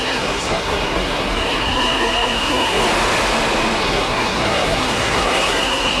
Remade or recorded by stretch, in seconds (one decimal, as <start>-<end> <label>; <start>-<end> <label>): 0.0-2.8 remade; 2.8-3.8 recorded; 3.8-6.0 remade